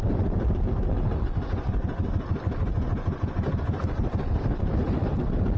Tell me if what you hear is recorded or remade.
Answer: recorded